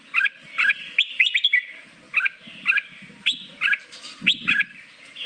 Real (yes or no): yes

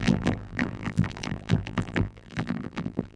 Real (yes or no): no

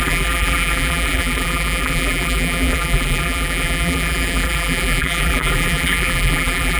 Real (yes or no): no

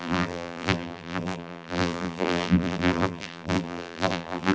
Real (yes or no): no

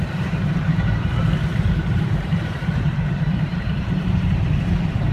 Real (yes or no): no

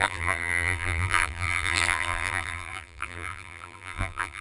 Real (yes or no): no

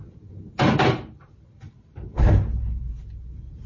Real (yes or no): no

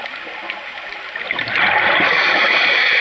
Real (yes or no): yes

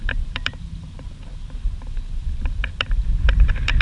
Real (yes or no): no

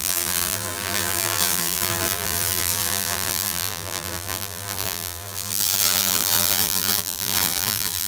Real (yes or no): no